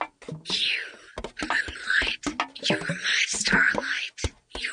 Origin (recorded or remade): recorded